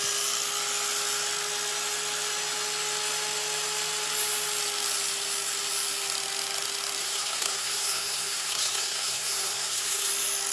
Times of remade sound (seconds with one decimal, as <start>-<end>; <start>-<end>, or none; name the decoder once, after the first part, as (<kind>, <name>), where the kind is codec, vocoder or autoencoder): 7.0-10.1 (codec, SNAC)